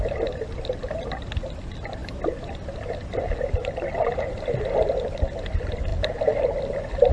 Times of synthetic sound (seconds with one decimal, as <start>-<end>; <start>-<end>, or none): none

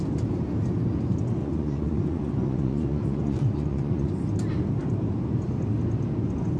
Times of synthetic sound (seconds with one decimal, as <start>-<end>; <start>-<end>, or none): 1.4-4.1

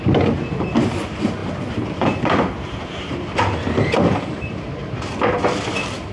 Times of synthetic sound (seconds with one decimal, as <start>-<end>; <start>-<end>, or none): none

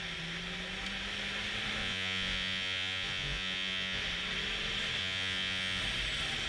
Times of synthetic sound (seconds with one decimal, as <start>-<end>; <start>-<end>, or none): 1.8-4.0; 5.0-5.8

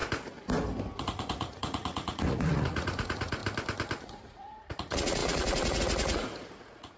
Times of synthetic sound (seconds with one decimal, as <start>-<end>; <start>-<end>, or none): 1.0-3.4; 4.0-7.0

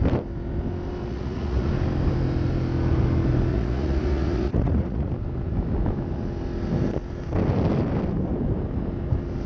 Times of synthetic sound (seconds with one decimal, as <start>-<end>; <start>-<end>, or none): 1.0-1.7; 3.5-5.1

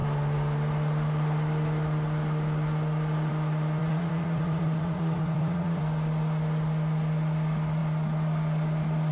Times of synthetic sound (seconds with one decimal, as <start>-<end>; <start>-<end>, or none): 3.8-5.8

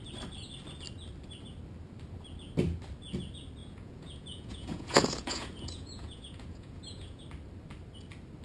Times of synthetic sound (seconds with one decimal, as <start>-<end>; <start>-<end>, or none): 3.6-7.2